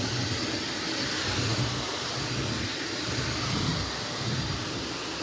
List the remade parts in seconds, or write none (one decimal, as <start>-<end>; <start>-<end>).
none